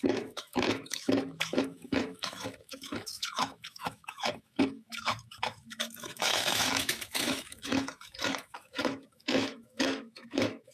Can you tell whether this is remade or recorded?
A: remade